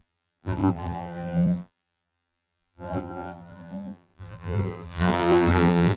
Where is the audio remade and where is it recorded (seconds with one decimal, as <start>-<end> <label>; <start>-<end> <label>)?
0.0-6.0 remade